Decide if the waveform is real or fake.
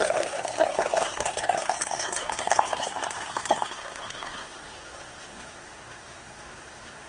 fake